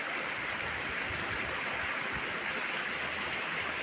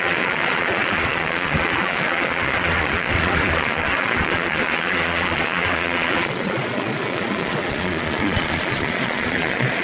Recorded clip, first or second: first